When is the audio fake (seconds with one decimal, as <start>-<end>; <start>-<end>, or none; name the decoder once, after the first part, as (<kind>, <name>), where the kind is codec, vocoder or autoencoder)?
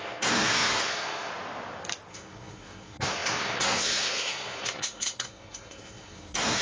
0.0-1.3 (codec, SNAC); 2.1-6.6